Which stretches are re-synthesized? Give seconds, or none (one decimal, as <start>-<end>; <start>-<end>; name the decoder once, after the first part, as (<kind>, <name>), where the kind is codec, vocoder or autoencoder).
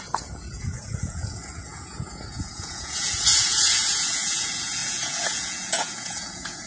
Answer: 0.0-6.7 (vocoder, Vocos)